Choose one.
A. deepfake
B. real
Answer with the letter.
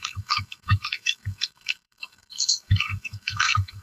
A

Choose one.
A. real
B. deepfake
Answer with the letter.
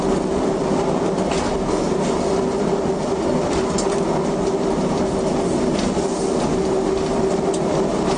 A